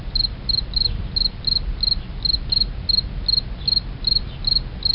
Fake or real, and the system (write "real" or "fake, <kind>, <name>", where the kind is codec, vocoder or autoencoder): real